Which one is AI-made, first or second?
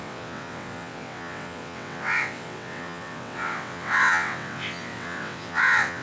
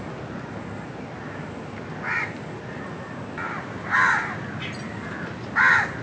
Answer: first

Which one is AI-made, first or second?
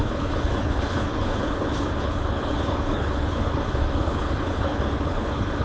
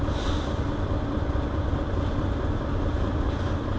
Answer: first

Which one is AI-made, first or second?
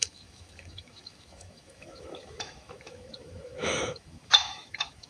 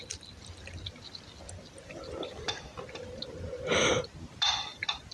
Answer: first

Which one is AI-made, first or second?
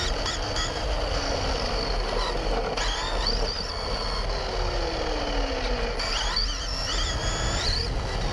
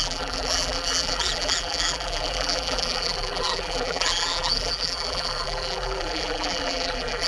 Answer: second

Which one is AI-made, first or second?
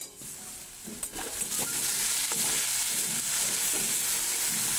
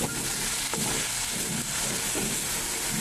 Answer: first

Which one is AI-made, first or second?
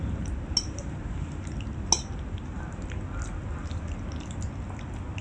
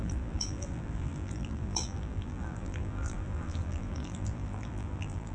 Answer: second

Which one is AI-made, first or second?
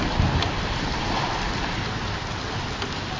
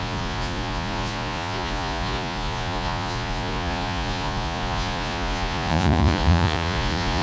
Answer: second